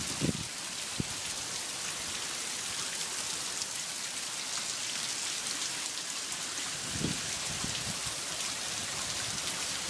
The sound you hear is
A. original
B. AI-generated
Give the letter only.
A